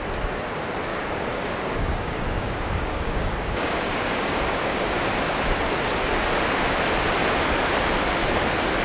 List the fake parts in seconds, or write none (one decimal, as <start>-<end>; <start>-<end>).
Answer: 0.9-5.1